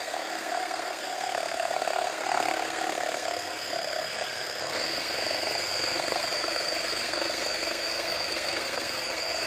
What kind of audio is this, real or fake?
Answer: fake